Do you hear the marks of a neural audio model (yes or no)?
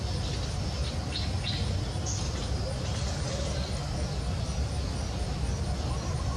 no